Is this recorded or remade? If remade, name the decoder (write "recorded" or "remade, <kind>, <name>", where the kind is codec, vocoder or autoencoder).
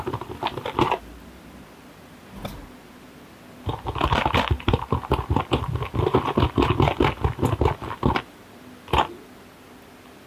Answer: remade, vocoder, BigVGAN v2